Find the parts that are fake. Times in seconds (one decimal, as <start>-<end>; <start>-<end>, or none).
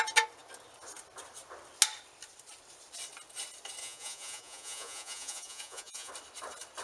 3.8-6.1